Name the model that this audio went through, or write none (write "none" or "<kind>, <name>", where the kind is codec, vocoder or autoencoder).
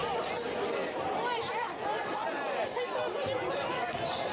none